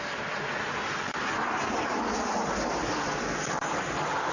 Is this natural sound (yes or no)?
yes